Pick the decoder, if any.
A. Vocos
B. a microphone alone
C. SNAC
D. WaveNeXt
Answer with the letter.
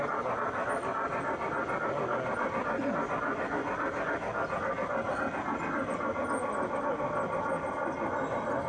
B